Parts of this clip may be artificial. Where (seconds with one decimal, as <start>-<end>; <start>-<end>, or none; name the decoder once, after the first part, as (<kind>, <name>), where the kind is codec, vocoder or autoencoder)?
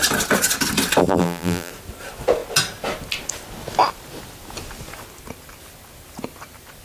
1.0-1.7 (vocoder, BigVGAN v2)